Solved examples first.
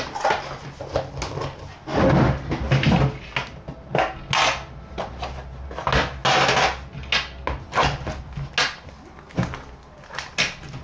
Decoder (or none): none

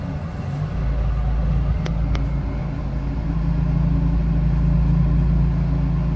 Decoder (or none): none